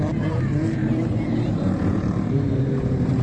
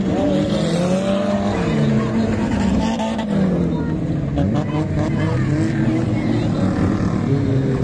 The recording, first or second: second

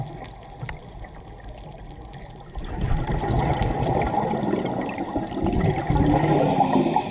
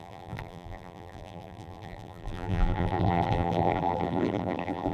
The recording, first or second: first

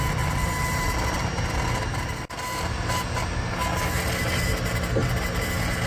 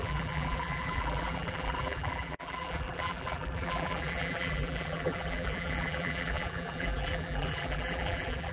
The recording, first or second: first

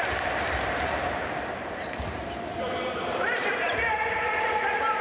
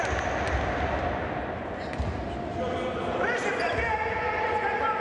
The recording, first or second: second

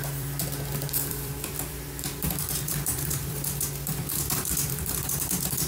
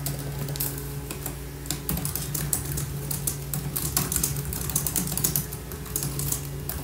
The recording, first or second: second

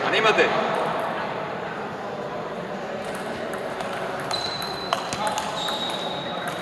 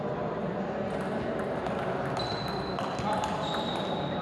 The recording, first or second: second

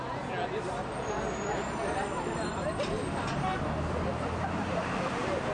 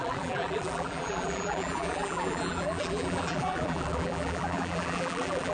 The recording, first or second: first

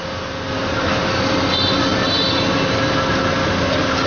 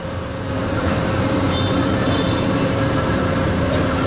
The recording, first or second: first